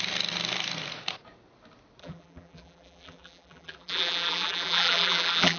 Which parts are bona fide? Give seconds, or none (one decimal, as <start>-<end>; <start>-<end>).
0.0-2.0